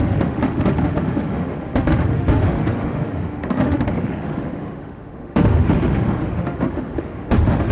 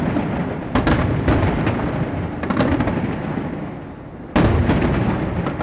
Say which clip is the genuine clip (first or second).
second